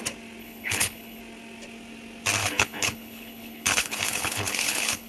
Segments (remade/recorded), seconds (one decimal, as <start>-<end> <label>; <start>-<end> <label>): 0.0-0.4 recorded; 0.4-1.2 remade; 1.2-2.4 recorded; 2.4-5.1 remade